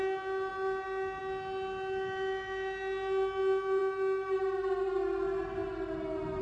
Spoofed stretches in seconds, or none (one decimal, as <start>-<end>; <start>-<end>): none